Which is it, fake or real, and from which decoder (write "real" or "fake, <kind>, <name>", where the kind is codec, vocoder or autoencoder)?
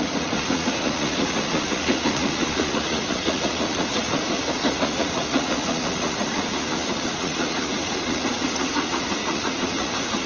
fake, vocoder, Vocos